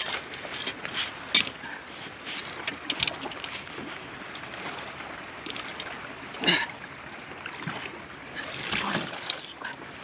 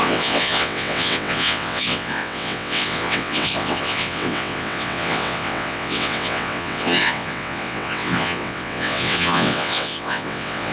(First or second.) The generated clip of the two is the second